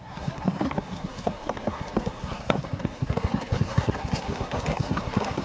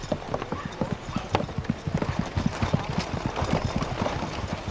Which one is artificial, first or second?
first